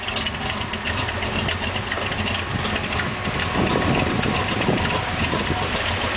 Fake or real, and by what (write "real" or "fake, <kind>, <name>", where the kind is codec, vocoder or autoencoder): real